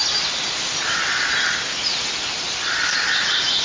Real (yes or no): yes